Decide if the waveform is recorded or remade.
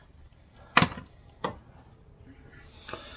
recorded